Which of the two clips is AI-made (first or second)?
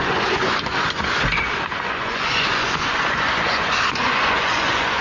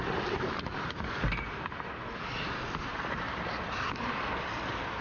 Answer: first